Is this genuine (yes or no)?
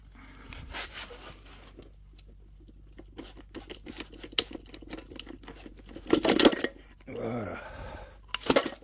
yes